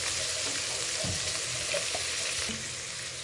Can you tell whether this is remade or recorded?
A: recorded